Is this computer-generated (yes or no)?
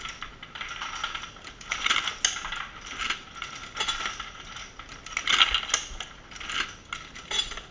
no